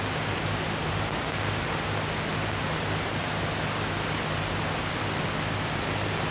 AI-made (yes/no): no